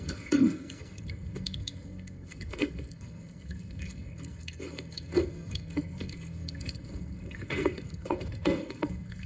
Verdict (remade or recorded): remade